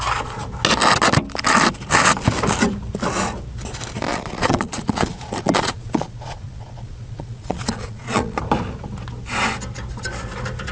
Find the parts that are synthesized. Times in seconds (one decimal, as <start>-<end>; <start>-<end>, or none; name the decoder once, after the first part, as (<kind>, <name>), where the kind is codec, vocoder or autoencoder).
4.1-8.4 (vocoder, Vocos)